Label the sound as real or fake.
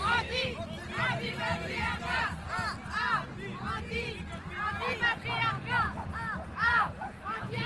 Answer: real